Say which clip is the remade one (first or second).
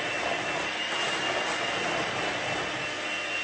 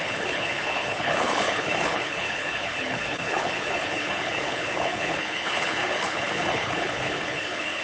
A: second